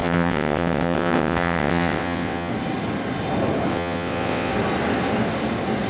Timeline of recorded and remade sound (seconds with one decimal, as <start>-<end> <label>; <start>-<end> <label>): 0.0-2.5 remade; 2.5-3.7 recorded; 3.7-4.5 remade; 4.5-5.9 recorded

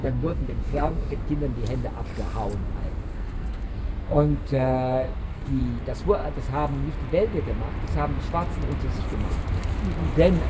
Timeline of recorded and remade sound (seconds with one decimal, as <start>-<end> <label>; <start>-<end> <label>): 0.0-1.2 remade; 1.2-3.1 recorded; 3.1-5.6 remade; 5.6-10.5 recorded

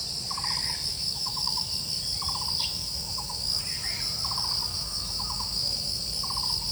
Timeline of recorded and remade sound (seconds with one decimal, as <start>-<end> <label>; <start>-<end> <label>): 0.0-0.9 recorded; 0.9-1.7 remade; 1.7-2.8 recorded; 2.8-3.6 remade; 3.6-4.7 recorded; 4.7-6.0 remade; 6.0-6.7 recorded

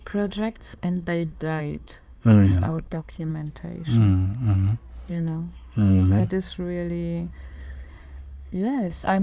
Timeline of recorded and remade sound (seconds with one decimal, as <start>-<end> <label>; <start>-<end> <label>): 0.0-3.3 remade; 3.3-5.1 recorded; 5.1-6.2 remade; 6.2-7.3 recorded; 7.3-9.2 remade

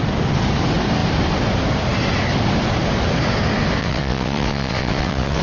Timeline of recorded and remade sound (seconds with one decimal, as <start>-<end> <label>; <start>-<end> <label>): 0.0-3.8 recorded; 3.8-5.4 remade

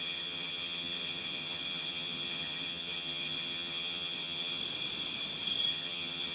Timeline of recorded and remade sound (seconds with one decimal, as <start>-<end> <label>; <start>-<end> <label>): 0.0-4.6 remade; 4.6-5.7 recorded; 5.7-6.3 remade

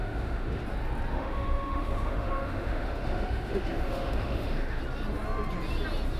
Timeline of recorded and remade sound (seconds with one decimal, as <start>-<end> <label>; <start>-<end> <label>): 0.0-0.6 remade; 0.6-1.1 recorded; 1.1-4.8 remade; 4.8-6.2 recorded

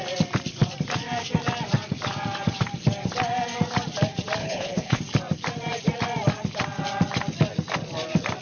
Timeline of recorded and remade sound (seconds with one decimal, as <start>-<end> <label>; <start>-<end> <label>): 0.0-4.4 recorded; 4.4-5.0 remade; 5.0-8.4 recorded